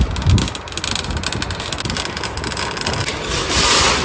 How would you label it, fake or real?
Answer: real